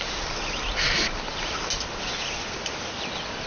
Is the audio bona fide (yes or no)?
yes